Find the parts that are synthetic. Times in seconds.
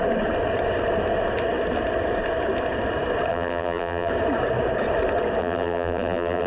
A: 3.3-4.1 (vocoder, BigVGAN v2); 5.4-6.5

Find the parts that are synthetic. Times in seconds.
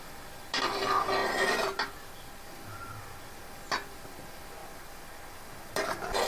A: none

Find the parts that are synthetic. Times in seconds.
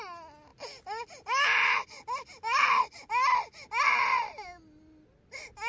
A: none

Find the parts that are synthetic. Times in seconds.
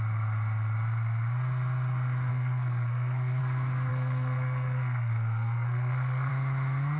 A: 2.3-3.4 (codec, SNAC); 3.9-6.3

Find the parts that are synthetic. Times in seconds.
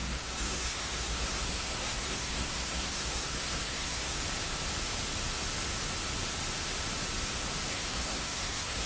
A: 0.0-4.2 (codec, SNAC); 7.7-8.9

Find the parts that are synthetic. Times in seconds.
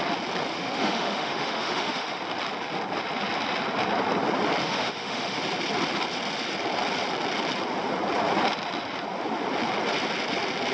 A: 0.5-2.2 (autoencoder, DAC-VAE); 4.6-5.4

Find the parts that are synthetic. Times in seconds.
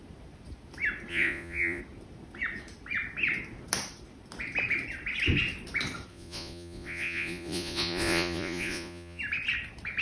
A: 1.1-1.8 (vocoder, Vocos); 6.1-9.2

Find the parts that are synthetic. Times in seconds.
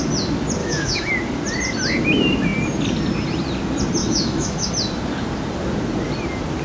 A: 0.6-1.1 (autoencoder, DAC-VAE); 4.0-4.7